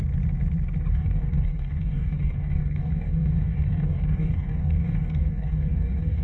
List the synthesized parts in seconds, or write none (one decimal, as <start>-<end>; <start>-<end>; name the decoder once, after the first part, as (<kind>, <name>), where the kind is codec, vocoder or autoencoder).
0.9-6.2 (codec, DAC)